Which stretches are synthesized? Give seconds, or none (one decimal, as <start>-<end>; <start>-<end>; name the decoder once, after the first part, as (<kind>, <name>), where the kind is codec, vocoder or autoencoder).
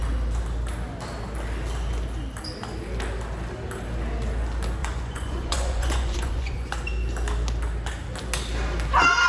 4.8-6.7 (vocoder, Vocos)